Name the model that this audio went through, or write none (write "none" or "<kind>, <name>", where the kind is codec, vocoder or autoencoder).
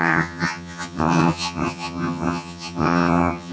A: vocoder, HiFi-GAN